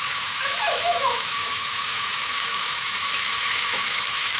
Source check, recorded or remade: remade